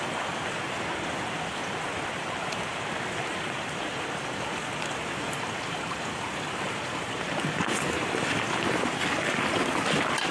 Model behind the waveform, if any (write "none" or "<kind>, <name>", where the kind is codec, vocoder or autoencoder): none